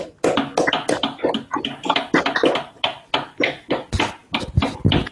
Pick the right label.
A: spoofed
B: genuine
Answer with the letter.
B